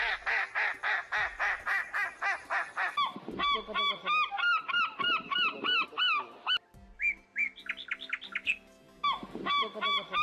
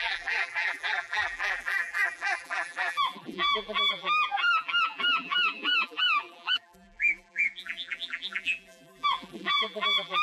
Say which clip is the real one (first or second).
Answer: first